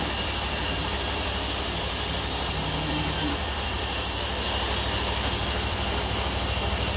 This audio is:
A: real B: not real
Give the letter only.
A